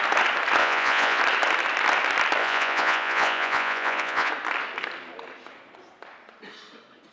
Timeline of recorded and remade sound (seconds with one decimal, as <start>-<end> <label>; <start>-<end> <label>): 0.0-0.6 recorded; 0.6-1.2 remade; 1.2-2.4 recorded; 2.4-4.3 remade; 4.3-7.1 recorded